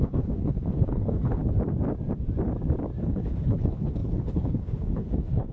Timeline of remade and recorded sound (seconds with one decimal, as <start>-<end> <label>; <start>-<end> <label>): 0.0-1.4 remade; 1.4-3.0 recorded; 3.0-5.5 remade

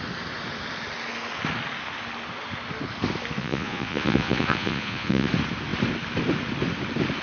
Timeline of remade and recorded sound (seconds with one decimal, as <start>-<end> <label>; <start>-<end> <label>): 0.0-3.4 recorded; 3.4-5.3 remade; 5.3-7.2 recorded

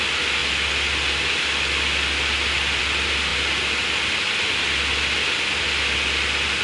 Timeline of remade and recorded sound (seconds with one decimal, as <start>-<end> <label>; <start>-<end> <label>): 0.0-6.6 recorded

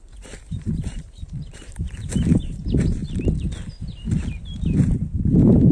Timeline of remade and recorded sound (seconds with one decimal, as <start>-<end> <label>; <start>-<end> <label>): 0.0-3.0 remade; 3.0-4.6 recorded; 4.6-5.7 remade